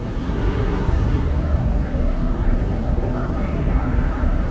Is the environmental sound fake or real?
fake